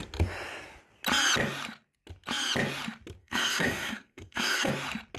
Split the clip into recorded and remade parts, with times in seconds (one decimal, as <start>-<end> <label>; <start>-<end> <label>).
0.0-3.2 recorded; 3.2-4.7 remade; 4.7-5.2 recorded